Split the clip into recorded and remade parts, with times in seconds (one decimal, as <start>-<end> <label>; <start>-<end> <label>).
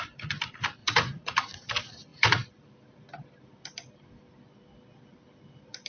0.0-0.8 recorded; 0.8-1.7 remade; 1.7-5.9 recorded